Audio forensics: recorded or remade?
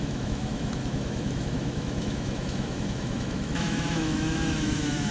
remade